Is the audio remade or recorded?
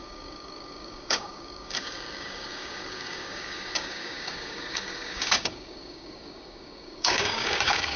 remade